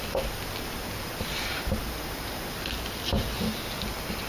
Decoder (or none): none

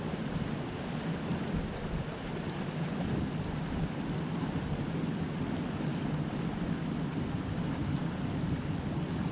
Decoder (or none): none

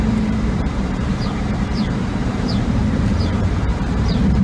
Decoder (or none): vocoder, BigVGAN v2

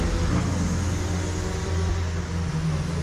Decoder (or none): none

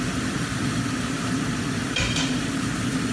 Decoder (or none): vocoder, BigVGAN v2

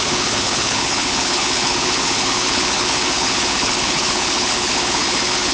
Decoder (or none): codec, HILCodec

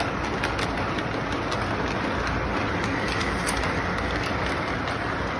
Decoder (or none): none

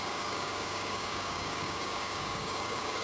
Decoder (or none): codec, DAC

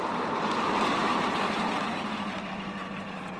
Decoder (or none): vocoder, BigVGAN v2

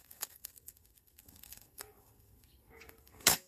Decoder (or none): codec, SNAC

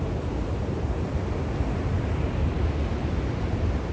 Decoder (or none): none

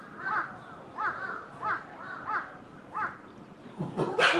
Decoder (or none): none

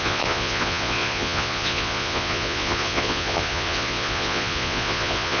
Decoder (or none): vocoder, Vocos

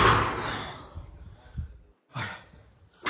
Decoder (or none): none